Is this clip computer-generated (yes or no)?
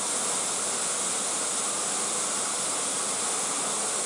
no